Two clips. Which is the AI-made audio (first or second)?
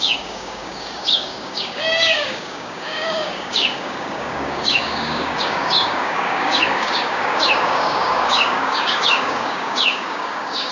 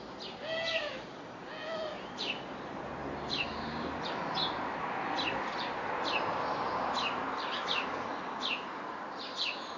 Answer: first